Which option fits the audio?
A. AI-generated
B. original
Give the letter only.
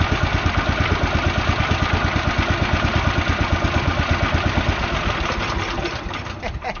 B